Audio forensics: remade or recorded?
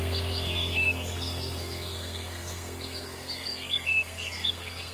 remade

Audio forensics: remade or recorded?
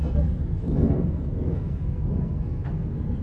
remade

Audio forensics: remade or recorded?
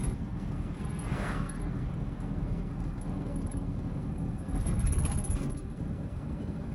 remade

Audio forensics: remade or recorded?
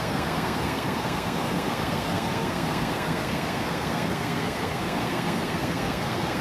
remade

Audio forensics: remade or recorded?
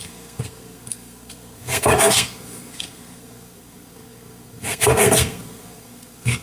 remade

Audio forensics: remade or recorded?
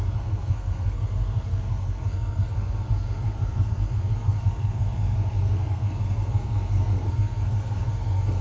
remade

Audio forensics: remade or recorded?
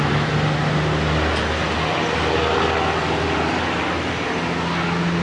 recorded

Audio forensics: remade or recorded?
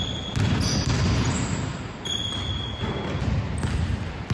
recorded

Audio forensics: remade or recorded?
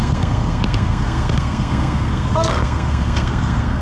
remade